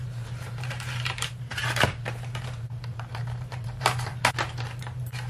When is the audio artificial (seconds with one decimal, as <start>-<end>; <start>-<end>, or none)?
0.0-4.1; 4.8-5.3